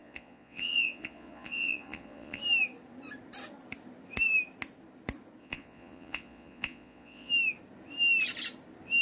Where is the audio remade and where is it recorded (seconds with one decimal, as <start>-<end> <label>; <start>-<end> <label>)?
0.0-2.4 remade; 2.4-5.4 recorded; 5.4-7.3 remade; 7.3-9.0 recorded